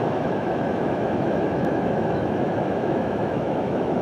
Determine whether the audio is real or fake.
fake